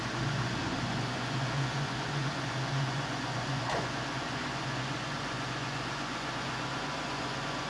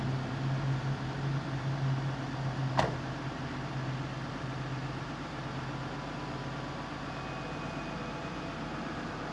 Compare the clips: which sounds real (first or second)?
second